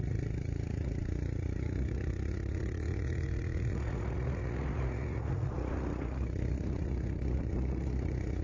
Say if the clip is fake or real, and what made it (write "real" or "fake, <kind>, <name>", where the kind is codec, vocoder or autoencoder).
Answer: fake, vocoder, Vocos